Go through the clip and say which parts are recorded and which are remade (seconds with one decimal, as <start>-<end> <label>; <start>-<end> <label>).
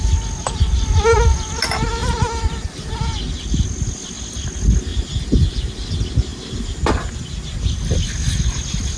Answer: 0.0-9.0 recorded